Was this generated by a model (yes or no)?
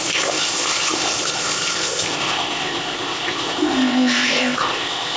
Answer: yes